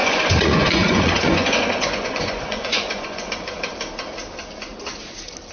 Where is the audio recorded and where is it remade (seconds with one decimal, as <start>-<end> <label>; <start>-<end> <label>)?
0.0-3.3 remade; 3.3-5.5 recorded